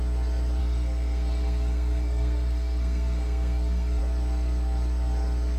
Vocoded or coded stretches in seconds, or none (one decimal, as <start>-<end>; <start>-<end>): 0.6-4.0